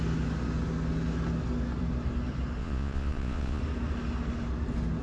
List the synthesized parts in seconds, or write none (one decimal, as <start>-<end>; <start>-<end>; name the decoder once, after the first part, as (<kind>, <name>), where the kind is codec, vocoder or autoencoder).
2.6-3.6 (vocoder, Vocos)